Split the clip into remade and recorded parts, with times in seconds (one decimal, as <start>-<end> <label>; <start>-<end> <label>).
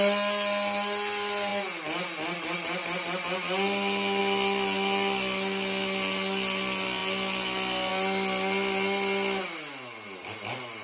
0.0-10.8 recorded